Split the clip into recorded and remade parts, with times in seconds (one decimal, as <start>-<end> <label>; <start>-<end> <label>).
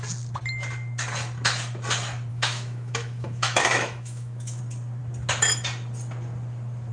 0.0-2.3 recorded; 2.3-4.6 remade; 4.6-6.9 recorded